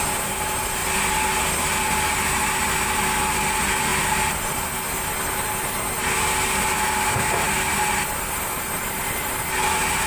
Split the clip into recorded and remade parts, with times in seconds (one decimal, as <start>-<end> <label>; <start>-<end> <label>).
0.0-10.1 recorded